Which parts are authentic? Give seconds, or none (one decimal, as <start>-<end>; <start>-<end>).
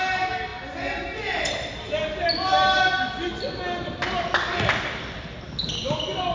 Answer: 0.0-6.3